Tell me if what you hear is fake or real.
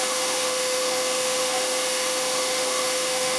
fake